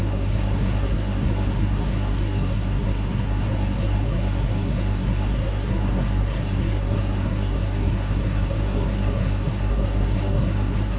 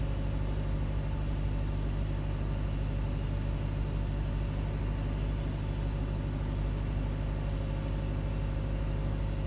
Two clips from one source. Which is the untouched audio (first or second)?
second